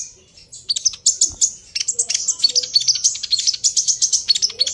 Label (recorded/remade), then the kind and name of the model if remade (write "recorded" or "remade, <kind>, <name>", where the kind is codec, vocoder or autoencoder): recorded